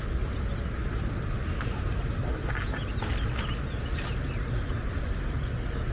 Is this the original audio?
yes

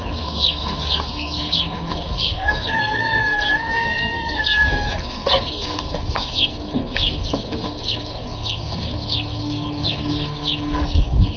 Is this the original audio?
no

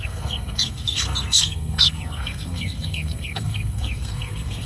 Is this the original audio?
no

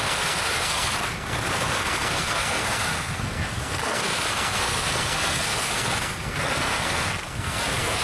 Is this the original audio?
no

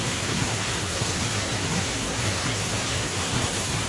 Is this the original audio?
no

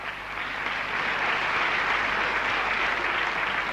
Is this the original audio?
yes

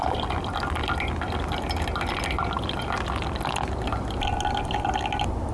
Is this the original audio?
yes